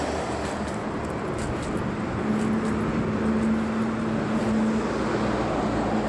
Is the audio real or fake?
real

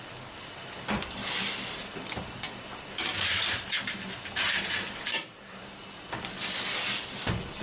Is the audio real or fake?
real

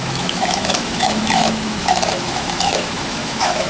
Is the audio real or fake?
fake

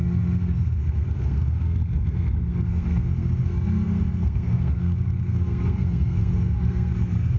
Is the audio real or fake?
fake